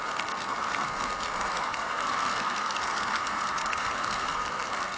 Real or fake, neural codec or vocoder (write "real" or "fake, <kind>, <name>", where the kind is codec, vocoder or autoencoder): fake, codec, SNAC